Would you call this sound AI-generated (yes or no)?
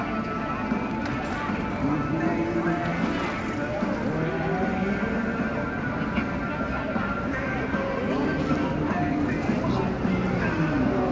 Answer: no